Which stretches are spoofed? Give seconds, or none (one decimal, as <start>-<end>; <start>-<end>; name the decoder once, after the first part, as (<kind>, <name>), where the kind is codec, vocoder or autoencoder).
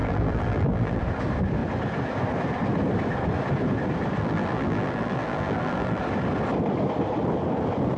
0.0-1.0 (vocoder, BigVGAN v2); 4.2-6.0